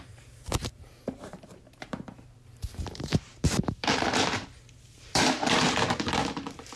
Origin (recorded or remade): remade